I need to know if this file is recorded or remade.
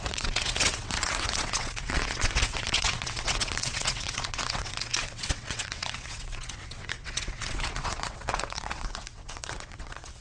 remade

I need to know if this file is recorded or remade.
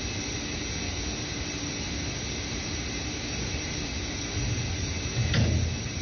recorded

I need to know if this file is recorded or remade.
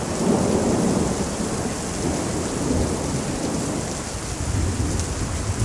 recorded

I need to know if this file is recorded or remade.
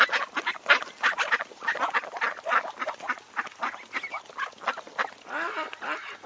recorded